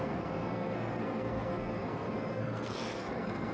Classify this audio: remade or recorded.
remade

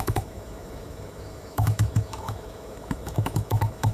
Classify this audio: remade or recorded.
remade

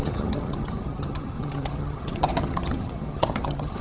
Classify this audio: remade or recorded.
remade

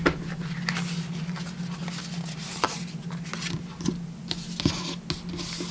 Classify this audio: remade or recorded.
recorded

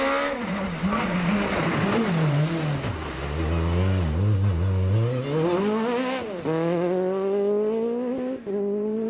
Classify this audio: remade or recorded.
recorded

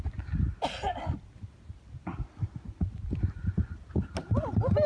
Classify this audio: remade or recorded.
recorded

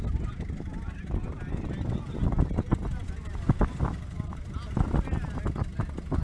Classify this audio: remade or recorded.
recorded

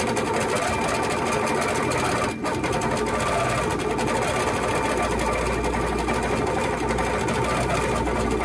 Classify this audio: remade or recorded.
recorded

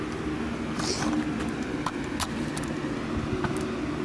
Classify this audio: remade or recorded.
recorded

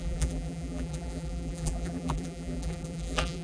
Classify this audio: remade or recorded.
remade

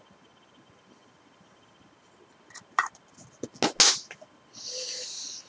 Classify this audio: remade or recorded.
recorded